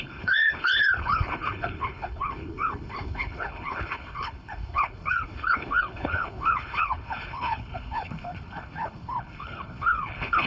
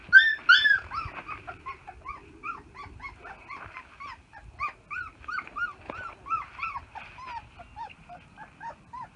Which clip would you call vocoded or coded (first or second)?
first